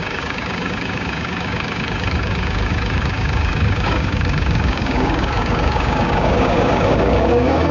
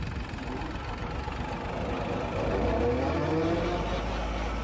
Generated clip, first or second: first